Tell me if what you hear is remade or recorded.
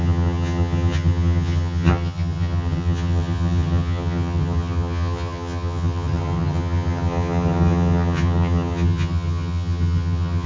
remade